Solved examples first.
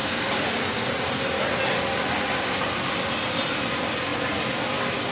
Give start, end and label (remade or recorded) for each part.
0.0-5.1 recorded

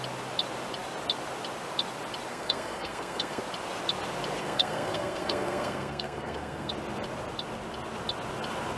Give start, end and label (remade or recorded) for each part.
0.0-2.3 recorded; 2.3-3.4 remade; 3.4-4.4 recorded; 4.4-6.7 remade; 6.7-8.8 recorded

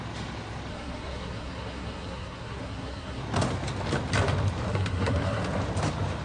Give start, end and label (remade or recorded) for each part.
0.0-0.7 recorded; 0.7-3.2 remade; 3.2-4.7 recorded; 4.7-5.4 remade; 5.4-6.2 recorded

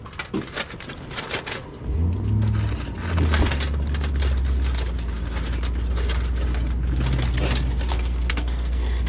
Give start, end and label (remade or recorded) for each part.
0.0-7.9 recorded; 7.9-9.1 remade